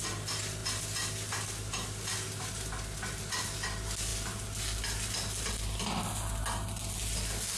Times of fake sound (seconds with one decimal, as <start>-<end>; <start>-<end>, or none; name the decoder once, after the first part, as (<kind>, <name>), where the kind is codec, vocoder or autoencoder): none